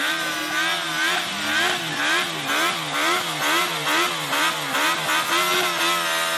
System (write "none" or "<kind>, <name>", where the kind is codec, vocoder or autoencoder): none